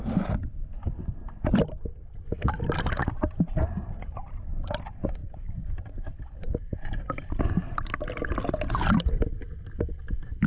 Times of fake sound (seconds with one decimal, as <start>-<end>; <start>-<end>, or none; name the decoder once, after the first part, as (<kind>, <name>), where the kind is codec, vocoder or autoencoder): 0.0-5.2 (vocoder, BigVGAN v2); 9.9-10.5